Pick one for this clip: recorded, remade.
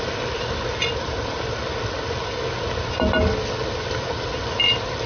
recorded